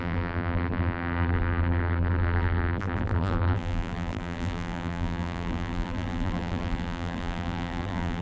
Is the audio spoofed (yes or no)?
yes